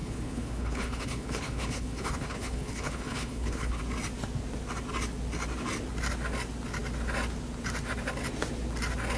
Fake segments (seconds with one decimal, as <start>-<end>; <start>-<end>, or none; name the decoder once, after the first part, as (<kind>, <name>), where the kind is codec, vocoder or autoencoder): 0.0-3.8 (codec, HILCodec)